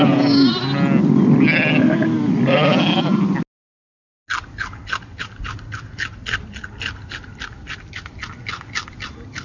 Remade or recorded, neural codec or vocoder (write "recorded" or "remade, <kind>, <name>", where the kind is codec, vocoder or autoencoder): recorded